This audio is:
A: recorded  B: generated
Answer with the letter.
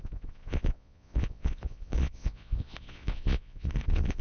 B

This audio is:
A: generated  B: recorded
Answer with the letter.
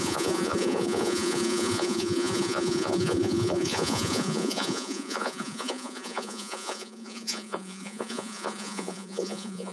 A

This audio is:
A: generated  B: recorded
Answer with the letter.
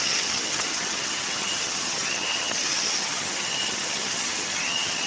A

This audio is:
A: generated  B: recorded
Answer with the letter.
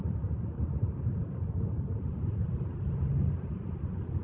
B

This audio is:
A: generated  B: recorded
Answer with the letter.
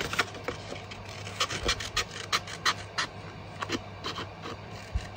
B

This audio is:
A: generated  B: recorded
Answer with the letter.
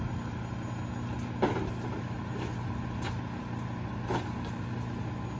B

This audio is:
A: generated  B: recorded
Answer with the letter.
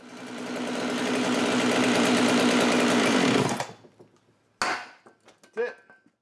B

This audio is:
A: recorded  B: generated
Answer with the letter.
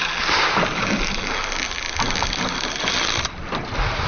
A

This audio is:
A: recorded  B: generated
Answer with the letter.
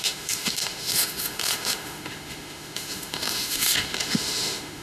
B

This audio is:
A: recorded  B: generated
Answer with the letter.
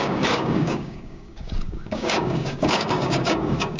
B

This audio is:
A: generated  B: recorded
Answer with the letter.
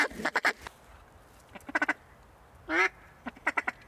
B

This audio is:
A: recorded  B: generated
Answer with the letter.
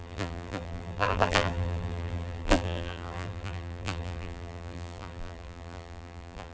B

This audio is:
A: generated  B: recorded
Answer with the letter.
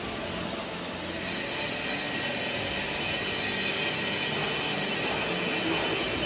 B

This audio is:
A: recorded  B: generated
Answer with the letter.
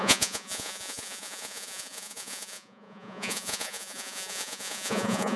B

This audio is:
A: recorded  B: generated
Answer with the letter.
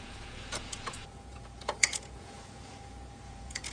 B